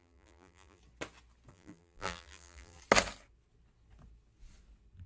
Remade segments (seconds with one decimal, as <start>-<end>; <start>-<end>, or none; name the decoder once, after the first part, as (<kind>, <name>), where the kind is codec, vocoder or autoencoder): 0.0-0.8 (vocoder, BigVGAN v2); 1.5-2.8